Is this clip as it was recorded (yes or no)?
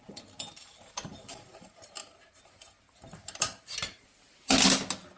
yes